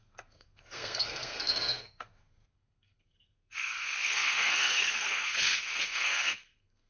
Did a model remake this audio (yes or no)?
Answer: yes